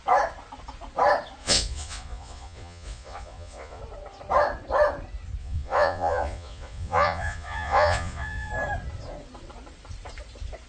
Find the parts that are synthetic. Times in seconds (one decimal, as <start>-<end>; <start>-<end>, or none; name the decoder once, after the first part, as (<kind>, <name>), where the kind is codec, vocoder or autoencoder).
1.4-3.8 (vocoder, Vocos); 5.4-8.5